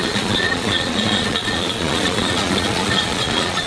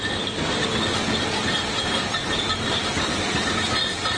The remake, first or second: first